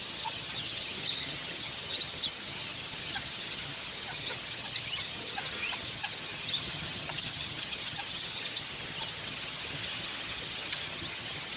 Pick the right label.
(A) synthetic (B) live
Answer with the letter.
A